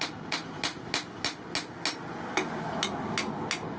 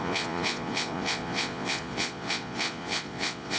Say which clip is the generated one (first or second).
second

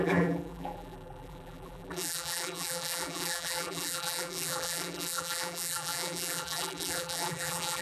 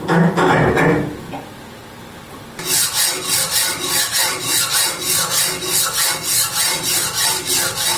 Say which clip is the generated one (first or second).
first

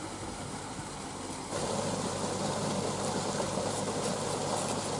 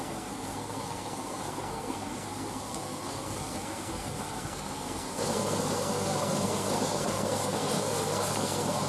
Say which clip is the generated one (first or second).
second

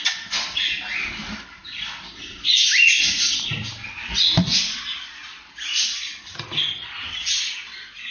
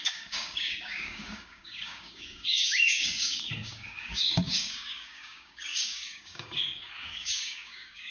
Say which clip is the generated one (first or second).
second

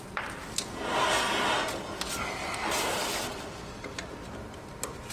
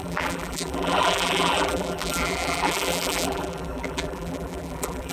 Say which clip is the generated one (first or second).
second